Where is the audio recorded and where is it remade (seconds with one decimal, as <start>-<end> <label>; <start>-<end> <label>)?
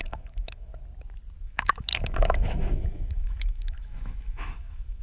0.0-0.7 remade; 0.7-1.4 recorded; 1.4-5.0 remade